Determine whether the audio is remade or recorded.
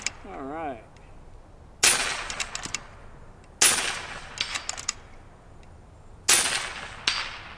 recorded